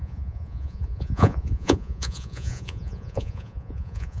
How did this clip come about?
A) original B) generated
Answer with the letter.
B